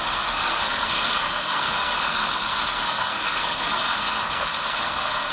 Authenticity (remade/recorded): remade